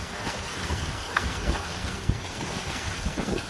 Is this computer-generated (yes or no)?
yes